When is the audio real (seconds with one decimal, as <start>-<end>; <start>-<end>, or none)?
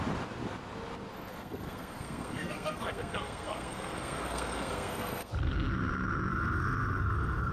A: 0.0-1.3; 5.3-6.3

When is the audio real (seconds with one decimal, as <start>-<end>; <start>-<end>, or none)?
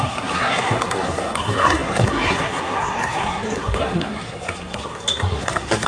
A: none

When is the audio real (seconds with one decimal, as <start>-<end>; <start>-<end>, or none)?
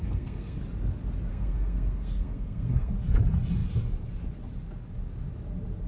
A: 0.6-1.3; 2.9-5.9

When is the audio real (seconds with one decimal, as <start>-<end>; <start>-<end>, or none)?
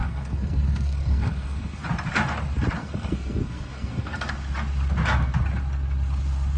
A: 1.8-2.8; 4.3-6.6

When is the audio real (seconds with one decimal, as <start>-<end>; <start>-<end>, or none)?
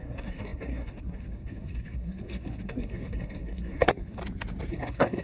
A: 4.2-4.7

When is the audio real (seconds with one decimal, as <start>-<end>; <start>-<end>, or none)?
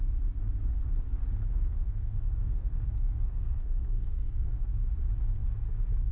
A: 0.0-1.5; 4.7-6.1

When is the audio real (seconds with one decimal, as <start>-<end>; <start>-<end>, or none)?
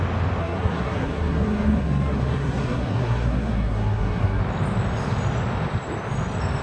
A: 0.0-0.4; 4.4-6.6